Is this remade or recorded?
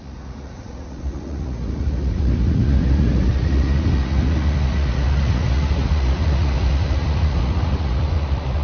remade